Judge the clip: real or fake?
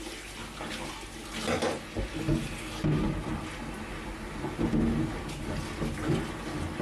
real